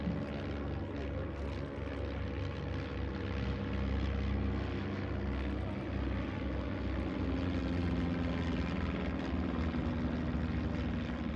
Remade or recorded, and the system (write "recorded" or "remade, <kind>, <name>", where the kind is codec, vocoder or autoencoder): recorded